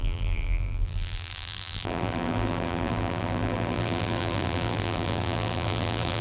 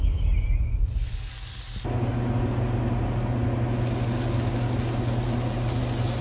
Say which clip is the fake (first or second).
first